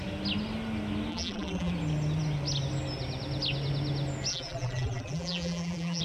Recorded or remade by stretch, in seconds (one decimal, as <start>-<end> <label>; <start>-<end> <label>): 0.0-1.1 recorded; 1.1-1.7 remade; 1.7-4.3 recorded; 4.3-6.0 remade